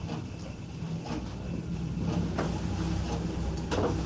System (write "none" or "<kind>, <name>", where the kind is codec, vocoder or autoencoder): none